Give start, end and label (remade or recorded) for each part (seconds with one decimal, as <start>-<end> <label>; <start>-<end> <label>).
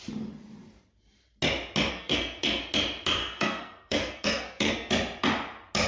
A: 0.0-1.9 recorded; 1.9-2.6 remade; 2.6-3.2 recorded; 3.2-4.9 remade; 4.9-5.9 recorded